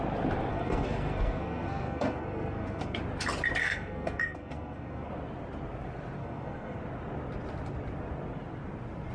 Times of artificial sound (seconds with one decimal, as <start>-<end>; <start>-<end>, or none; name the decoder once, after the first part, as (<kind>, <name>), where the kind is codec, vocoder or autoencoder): 0.5-3.0 (codec, SNAC); 3.6-5.1; 6.2-6.8